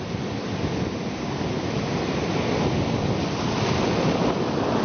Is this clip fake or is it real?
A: real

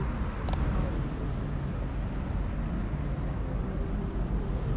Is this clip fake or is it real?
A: real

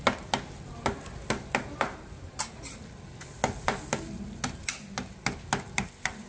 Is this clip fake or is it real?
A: real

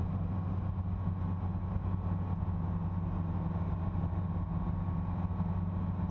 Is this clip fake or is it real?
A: real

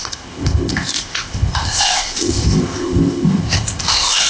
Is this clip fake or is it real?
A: fake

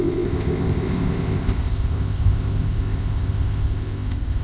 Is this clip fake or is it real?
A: fake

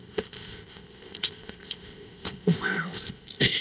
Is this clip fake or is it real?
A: fake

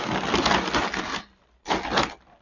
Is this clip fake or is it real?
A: real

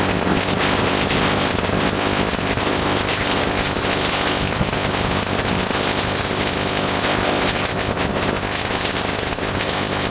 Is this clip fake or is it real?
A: fake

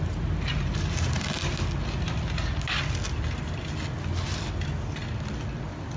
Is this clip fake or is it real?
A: real